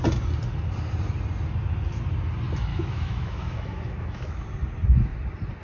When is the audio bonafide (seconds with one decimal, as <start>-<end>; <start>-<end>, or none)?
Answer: 0.0-2.7; 4.4-5.6